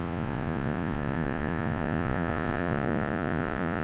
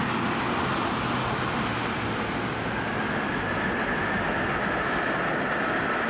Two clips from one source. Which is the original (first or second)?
second